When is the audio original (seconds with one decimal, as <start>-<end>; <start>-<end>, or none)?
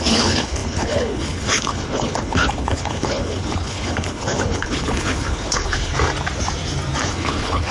5.9-7.1